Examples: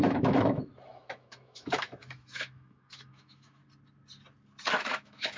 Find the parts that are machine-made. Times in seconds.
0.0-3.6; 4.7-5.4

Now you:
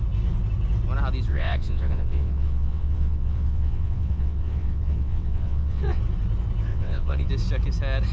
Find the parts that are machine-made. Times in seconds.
1.3-6.0; 6.7-7.3

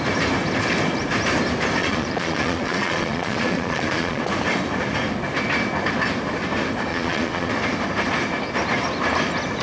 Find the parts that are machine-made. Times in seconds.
1.8-4.2; 6.9-7.5

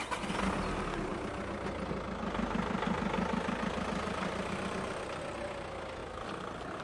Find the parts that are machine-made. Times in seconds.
none